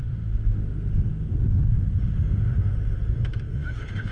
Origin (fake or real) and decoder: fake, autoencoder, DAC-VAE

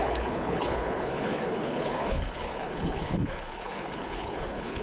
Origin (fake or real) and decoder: fake, codec, HILCodec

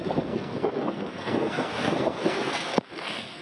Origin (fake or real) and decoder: fake, codec, SNAC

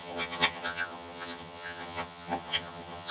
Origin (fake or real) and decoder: fake, vocoder, HiFi-GAN